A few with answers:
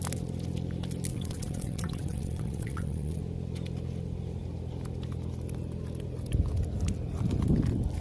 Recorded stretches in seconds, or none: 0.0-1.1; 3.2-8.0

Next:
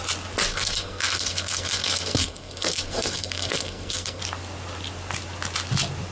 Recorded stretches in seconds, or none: 0.0-0.5; 4.2-6.1

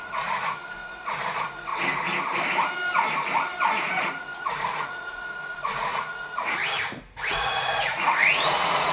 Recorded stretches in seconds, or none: 1.7-4.1; 6.6-7.2